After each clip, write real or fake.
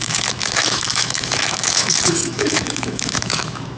fake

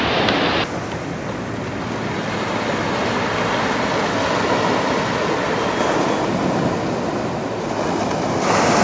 real